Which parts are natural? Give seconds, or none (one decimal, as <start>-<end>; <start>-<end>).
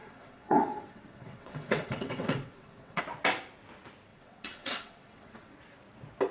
3.0-4.1; 5.5-6.3